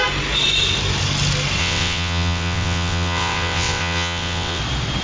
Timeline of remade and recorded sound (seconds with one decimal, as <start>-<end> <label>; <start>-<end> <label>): 0.0-1.6 recorded; 1.6-4.6 remade; 4.6-5.0 recorded